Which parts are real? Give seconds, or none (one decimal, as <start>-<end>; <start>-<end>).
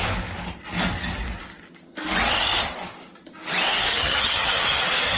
0.0-3.9; 4.8-5.2